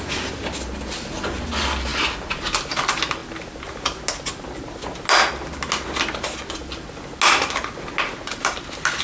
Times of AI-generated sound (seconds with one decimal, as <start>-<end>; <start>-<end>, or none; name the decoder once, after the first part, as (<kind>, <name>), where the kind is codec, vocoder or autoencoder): 1.9-2.4 (vocoder, BigVGAN v2)